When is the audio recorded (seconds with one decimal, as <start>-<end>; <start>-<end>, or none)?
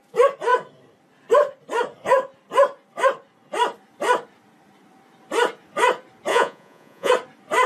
0.0-6.3; 7.1-7.7